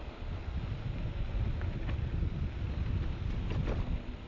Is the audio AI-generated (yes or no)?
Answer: no